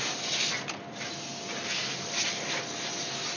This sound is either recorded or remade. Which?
recorded